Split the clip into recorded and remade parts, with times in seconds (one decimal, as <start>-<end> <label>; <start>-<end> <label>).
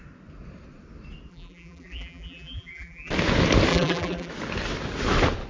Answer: 0.0-1.3 recorded; 1.3-3.1 remade; 3.1-3.7 recorded; 3.7-4.3 remade; 4.3-5.5 recorded